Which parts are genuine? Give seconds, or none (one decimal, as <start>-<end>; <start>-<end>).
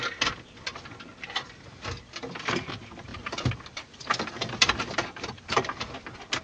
0.0-3.1; 5.8-6.4